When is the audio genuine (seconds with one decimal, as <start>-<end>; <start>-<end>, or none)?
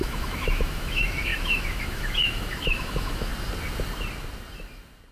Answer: 3.3-5.1